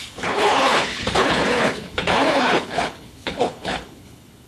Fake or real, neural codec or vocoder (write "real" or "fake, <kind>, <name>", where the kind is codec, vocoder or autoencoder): fake, codec, HILCodec